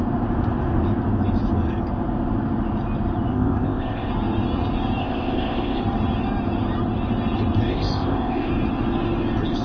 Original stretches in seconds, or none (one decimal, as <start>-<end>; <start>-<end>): 0.0-3.3; 4.1-5.0; 5.8-7.7; 8.5-9.6